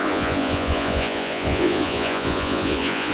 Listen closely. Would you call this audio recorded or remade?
remade